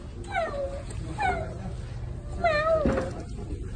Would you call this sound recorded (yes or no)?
yes